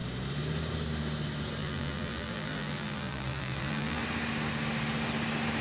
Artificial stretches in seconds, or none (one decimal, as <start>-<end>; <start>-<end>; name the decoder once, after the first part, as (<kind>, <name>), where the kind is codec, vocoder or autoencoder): 1.6-4.0 (vocoder, BigVGAN v2)